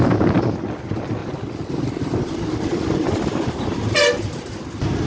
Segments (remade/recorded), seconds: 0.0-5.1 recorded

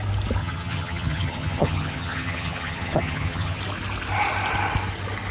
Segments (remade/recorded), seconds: 0.0-0.4 recorded; 0.4-3.6 remade; 3.6-5.3 recorded

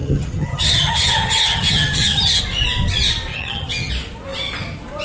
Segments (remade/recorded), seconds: 0.0-2.4 remade; 2.4-3.3 recorded; 3.3-3.9 remade; 3.9-5.0 recorded

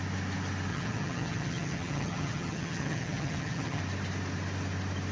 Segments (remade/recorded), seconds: 0.0-0.7 recorded; 0.7-3.8 remade; 3.8-5.1 recorded